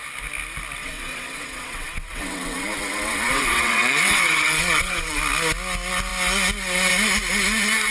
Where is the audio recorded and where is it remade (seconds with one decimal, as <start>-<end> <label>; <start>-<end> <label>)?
0.0-0.8 recorded; 0.8-5.2 remade; 5.2-7.9 recorded